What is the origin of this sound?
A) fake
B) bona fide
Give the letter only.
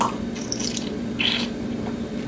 B